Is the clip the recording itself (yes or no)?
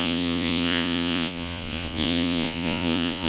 no